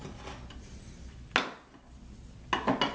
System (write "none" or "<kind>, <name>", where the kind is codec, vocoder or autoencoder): none